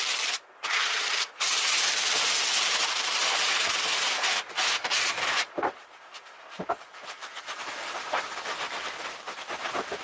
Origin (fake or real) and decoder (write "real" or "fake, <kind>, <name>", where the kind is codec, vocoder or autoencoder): fake, vocoder, BigVGAN v2